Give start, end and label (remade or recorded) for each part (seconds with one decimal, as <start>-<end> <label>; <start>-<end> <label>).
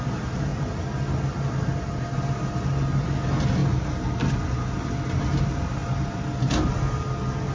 0.0-7.5 recorded